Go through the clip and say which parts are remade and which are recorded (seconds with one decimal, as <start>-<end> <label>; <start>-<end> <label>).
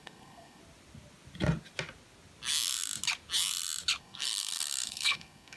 0.0-0.6 remade; 0.6-4.0 recorded; 4.0-5.6 remade